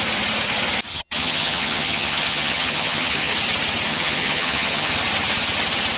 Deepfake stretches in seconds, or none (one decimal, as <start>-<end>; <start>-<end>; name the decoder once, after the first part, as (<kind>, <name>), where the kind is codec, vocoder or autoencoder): 0.9-3.3 (vocoder, HiFi-GAN); 3.9-4.9